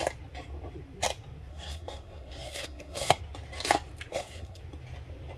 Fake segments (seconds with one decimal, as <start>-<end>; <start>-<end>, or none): 1.5-3.2; 4.1-4.6